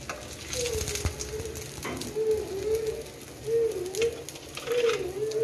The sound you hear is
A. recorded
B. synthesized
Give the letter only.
A